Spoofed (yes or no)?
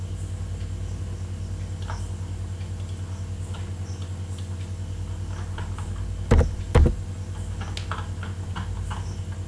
no